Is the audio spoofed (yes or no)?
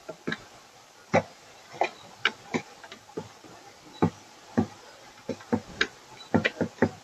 no